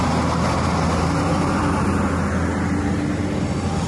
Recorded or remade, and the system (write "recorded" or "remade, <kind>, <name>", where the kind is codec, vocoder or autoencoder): recorded